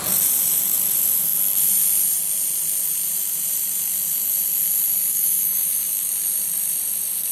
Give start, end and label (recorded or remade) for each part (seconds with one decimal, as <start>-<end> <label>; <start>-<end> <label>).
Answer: 0.0-5.1 recorded; 5.1-6.1 remade; 6.1-7.3 recorded